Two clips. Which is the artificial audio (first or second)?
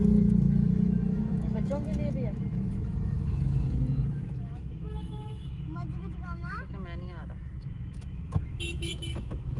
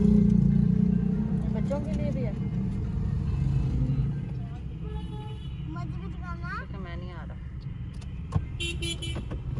first